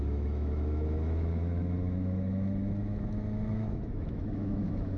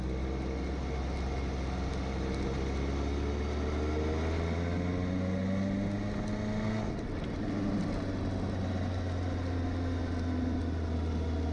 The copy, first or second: first